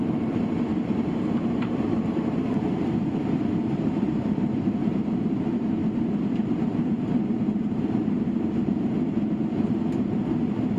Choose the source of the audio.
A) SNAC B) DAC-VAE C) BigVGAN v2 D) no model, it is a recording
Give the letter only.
C